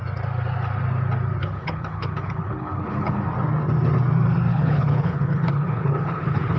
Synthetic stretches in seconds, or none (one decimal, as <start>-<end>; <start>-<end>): 1.4-3.2; 4.5-6.6